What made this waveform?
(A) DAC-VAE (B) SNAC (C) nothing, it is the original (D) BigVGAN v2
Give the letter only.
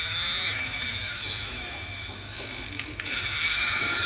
A